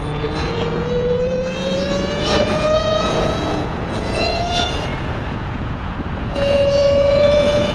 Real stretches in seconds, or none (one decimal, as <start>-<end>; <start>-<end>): none